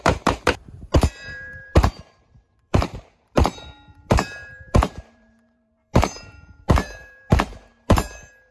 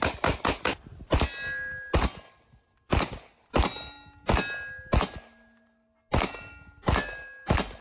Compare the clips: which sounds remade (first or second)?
first